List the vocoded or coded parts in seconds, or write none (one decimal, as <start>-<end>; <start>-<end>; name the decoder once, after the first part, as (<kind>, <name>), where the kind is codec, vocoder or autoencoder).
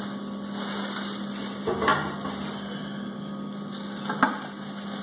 none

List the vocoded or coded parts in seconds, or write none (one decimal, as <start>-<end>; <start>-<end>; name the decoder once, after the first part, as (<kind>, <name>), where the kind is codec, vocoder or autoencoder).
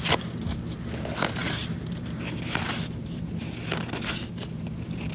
none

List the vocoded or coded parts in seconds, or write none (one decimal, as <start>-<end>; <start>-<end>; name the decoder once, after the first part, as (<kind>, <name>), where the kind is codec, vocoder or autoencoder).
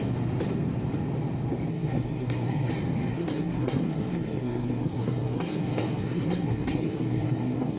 1.7-2.7 (codec, SNAC); 3.1-7.8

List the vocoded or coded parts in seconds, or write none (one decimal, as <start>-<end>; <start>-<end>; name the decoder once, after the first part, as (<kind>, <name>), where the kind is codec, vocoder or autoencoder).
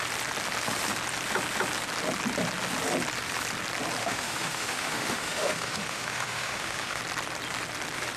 4.0-7.0 (autoencoder, DAC-VAE)